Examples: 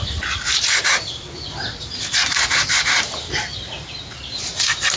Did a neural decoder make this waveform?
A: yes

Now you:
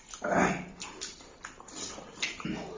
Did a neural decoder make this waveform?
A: yes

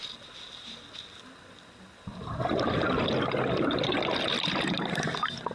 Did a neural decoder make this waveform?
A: no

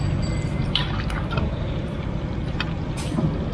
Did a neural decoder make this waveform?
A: yes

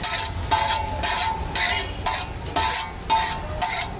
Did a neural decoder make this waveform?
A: no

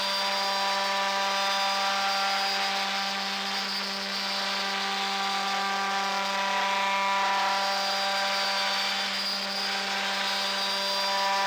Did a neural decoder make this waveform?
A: no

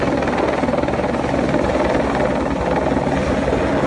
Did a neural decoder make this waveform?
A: no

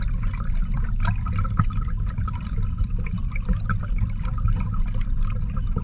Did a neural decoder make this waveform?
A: yes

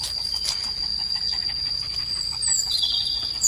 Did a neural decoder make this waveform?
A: no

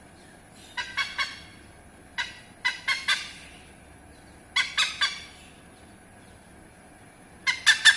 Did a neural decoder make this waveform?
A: no